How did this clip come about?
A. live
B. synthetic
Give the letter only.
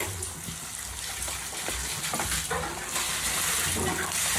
A